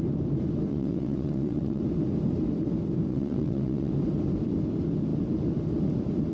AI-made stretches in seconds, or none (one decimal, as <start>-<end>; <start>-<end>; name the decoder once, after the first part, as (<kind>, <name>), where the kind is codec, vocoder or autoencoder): 0.7-1.8 (vocoder, WaveNeXt); 3.1-3.9